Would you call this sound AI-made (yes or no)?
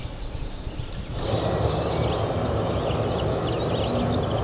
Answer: no